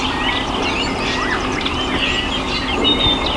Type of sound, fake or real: real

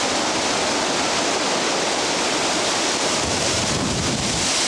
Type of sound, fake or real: real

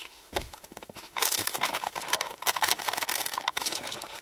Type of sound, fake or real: fake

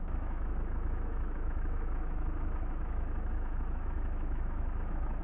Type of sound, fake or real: fake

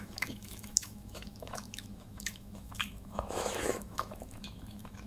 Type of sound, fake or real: fake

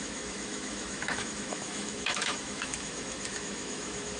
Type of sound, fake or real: fake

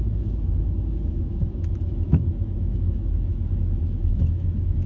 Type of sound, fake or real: fake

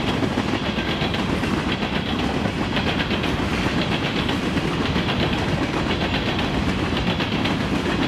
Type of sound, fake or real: real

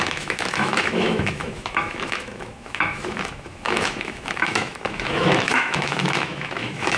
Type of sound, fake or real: fake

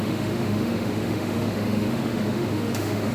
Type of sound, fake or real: fake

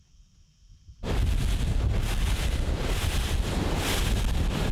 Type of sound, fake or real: real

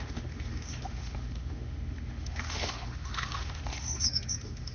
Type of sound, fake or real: fake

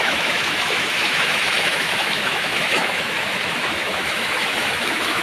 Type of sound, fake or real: fake